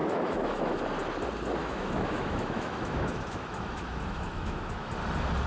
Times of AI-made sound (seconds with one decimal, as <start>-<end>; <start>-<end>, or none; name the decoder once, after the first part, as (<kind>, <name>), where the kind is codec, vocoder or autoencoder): 0.0-0.8 (autoencoder, DAC-VAE); 1.6-4.9